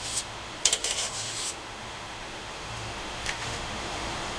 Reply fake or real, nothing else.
fake